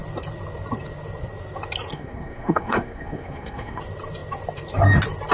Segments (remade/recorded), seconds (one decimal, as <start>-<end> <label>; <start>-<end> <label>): 0.0-1.9 recorded; 1.9-3.8 remade; 3.8-5.3 recorded